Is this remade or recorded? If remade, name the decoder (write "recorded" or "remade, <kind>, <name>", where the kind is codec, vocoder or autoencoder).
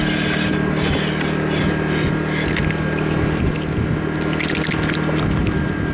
recorded